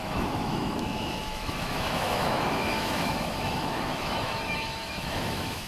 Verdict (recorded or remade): remade